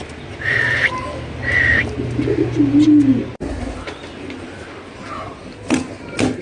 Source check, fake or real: real